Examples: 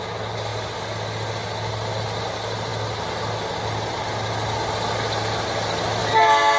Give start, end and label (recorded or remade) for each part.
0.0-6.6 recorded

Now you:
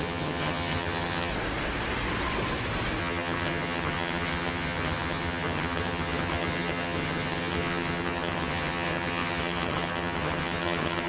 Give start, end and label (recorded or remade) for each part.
0.0-1.3 remade; 1.3-3.0 recorded; 3.0-11.1 remade

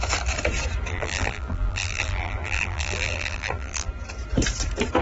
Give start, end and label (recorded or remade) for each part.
0.0-0.9 recorded; 0.9-3.9 remade; 3.9-5.0 recorded

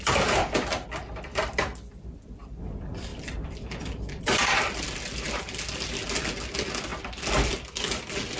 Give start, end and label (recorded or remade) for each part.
0.0-8.4 recorded

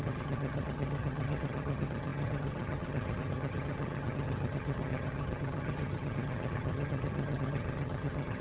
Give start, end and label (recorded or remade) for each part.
0.0-8.4 remade

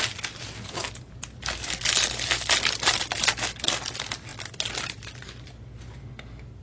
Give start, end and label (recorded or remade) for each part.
0.0-6.6 recorded